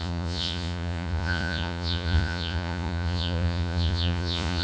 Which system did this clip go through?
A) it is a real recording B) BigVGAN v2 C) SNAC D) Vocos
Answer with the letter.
D